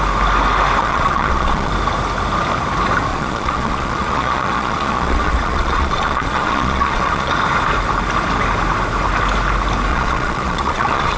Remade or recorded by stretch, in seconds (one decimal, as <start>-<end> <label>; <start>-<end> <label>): 0.0-0.8 recorded; 0.8-1.7 remade; 1.7-3.1 recorded; 3.1-7.3 remade; 7.3-9.9 recorded; 9.9-11.2 remade